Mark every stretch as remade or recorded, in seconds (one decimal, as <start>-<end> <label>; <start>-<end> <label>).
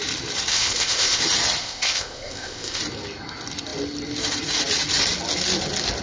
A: 0.0-0.5 recorded; 0.5-1.2 remade; 1.2-1.6 recorded; 1.6-2.8 remade; 2.8-6.0 recorded